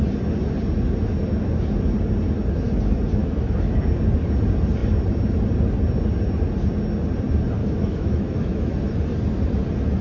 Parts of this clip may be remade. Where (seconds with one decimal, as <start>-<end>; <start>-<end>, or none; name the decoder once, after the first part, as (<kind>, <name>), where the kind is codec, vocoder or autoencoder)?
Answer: 3.2-3.8 (autoencoder, DAC-VAE); 7.6-9.0